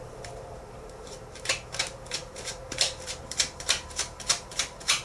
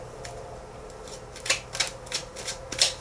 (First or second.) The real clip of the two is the second